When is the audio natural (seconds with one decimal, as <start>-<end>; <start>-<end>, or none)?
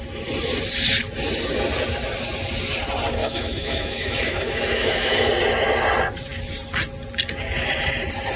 0.0-3.2; 5.3-8.4